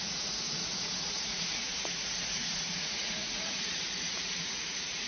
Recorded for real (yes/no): no